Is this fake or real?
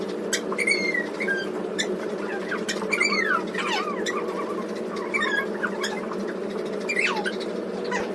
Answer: real